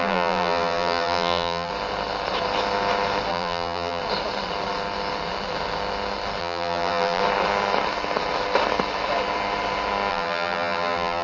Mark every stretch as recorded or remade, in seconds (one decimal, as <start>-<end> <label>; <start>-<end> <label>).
0.0-1.7 remade; 1.7-3.3 recorded; 3.3-4.0 remade; 4.0-6.4 recorded; 6.4-7.2 remade; 7.2-10.1 recorded; 10.1-11.2 remade